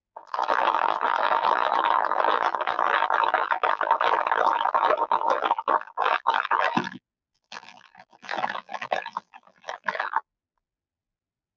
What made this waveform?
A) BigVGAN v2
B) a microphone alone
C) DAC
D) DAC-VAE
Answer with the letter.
A